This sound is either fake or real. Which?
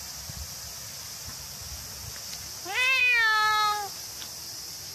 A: real